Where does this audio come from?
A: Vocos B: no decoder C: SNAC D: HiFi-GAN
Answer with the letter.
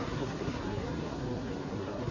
C